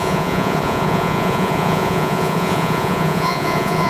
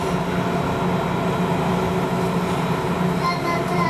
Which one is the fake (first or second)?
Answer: first